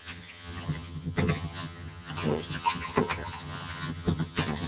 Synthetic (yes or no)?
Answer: yes